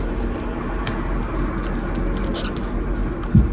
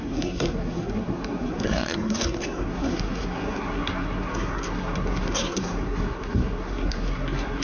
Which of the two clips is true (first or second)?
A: first